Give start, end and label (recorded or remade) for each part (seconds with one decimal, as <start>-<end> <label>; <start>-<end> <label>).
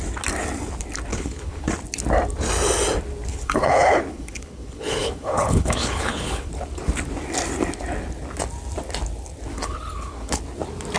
0.0-1.1 recorded; 1.1-1.7 remade; 1.7-3.3 recorded; 3.3-6.5 remade; 6.5-9.5 recorded; 9.5-10.4 remade; 10.4-11.0 recorded